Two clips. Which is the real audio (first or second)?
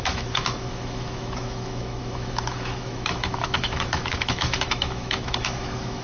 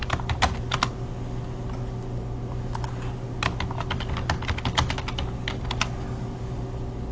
second